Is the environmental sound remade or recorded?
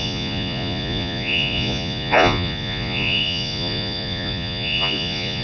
remade